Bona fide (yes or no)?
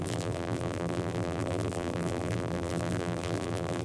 no